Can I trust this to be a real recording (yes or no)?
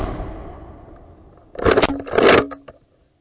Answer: yes